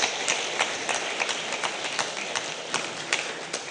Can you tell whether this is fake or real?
real